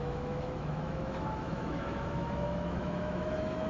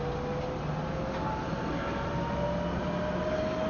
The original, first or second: second